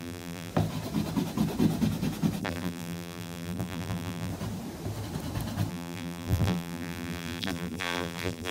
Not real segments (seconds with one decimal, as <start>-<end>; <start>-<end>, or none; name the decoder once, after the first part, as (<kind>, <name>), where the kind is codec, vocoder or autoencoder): 0.0-0.5 (vocoder, BigVGAN v2); 2.4-4.3; 5.7-8.5